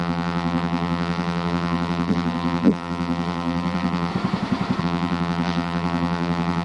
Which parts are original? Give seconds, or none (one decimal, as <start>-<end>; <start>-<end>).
4.1-4.8